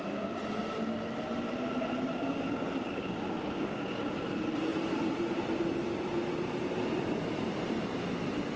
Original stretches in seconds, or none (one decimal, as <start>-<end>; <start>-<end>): 0.0-2.1; 4.0-8.6